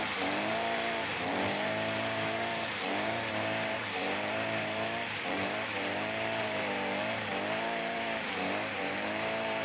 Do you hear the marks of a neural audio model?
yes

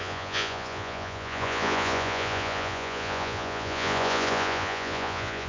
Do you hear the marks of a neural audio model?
yes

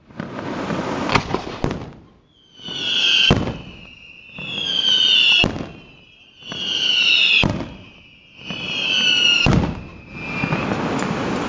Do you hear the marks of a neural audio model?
no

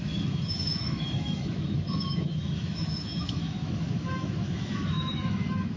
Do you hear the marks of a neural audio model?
yes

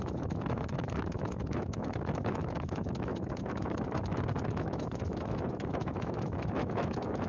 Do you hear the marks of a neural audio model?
yes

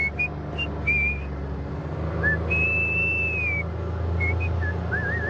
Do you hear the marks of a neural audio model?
no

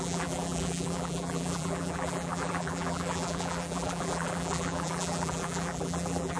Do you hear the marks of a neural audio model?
yes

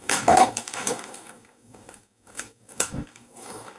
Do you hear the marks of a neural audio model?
yes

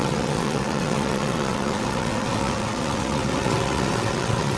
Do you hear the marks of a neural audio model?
yes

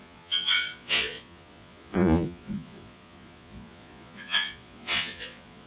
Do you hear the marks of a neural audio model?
yes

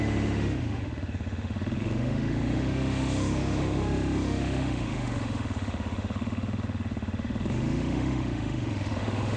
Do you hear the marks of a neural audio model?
yes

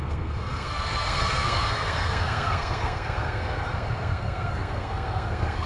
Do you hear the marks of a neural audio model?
yes